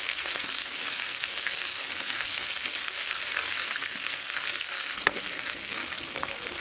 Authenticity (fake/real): fake